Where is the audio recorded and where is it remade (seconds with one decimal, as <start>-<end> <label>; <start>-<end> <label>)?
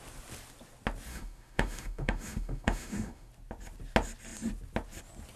0.0-1.1 recorded; 1.1-3.3 remade; 3.3-5.4 recorded